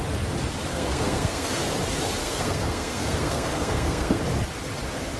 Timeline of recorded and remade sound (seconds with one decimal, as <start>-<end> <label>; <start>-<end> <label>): 0.0-0.7 recorded; 0.7-1.7 remade; 1.7-2.2 recorded; 2.2-4.2 remade; 4.2-5.2 recorded